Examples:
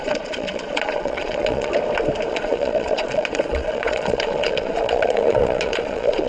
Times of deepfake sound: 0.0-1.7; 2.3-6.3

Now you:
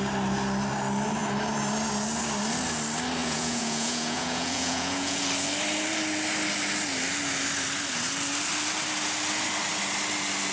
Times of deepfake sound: 3.2-5.2

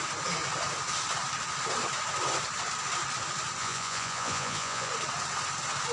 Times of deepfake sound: 3.6-4.9

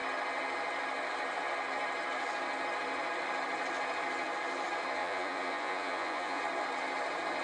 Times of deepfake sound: 5.0-6.4

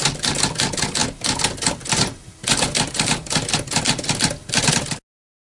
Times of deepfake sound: none